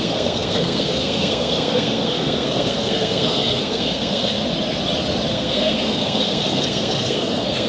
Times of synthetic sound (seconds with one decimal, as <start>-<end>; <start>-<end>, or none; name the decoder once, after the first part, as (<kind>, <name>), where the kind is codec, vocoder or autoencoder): 0.0-4.4 (codec, SNAC); 5.3-7.7

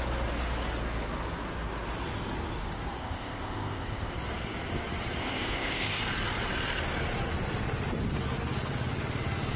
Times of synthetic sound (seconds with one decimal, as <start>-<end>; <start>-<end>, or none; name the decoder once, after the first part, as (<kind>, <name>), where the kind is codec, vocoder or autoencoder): 3.0-4.1 (codec, ZipCodec); 5.2-6.0

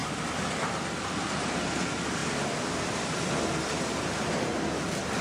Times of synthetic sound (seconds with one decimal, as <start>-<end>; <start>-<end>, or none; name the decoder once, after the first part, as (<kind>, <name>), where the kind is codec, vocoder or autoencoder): none

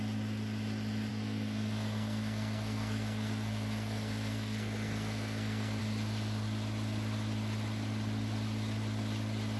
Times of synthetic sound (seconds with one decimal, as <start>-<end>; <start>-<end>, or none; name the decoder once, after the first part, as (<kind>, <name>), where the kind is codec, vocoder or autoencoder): 1.1-5.8 (codec, SNAC)

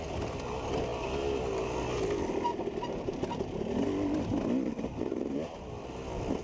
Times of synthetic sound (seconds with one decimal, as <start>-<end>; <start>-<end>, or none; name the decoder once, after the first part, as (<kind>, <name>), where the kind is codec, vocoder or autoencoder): none

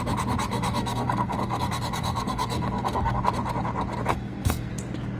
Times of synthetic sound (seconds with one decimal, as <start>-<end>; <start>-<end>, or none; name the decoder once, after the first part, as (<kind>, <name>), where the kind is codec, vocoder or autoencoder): 0.5-3.2 (codec, SNAC); 4.1-4.7

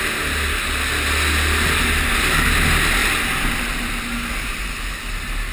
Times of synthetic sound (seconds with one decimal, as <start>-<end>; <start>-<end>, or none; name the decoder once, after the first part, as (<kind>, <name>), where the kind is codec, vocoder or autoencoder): none